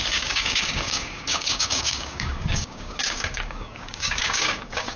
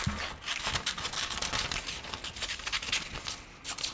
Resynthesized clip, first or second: first